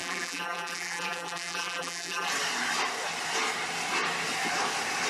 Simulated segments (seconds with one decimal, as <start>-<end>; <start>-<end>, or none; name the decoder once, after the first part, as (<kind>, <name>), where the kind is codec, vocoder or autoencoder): 0.0-2.3 (vocoder, BigVGAN v2)